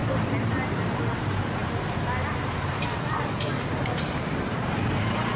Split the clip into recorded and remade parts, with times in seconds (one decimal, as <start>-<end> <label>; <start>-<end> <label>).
0.0-1.0 remade; 1.0-5.4 recorded